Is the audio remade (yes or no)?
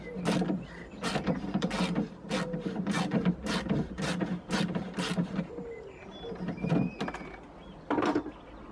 no